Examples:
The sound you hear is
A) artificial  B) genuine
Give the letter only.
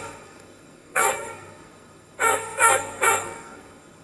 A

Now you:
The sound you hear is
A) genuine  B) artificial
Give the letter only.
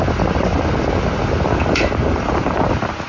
A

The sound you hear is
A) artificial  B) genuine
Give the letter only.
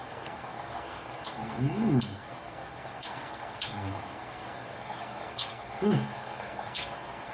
A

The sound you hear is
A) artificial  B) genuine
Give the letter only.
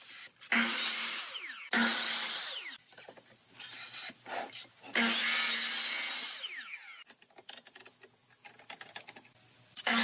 B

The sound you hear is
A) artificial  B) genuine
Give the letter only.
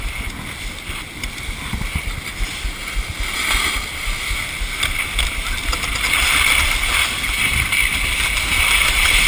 B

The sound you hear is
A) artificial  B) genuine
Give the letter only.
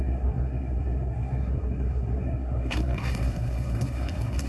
A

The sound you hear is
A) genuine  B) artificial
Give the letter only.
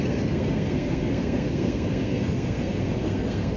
B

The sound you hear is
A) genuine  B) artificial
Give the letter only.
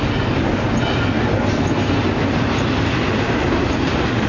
A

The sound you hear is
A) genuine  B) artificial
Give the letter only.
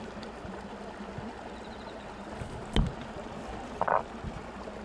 A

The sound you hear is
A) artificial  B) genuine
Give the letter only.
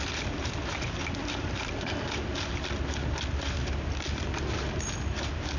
B